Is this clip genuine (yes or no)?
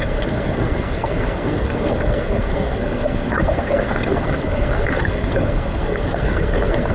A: no